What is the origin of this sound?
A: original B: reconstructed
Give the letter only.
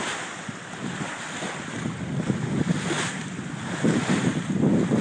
A